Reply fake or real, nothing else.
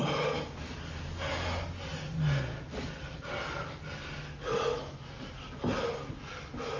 real